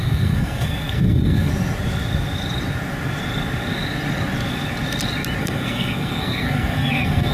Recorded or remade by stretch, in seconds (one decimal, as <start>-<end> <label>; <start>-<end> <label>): 0.0-1.5 remade; 1.5-5.4 recorded; 5.4-7.3 remade